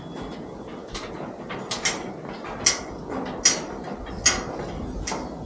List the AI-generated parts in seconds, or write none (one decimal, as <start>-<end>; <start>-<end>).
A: none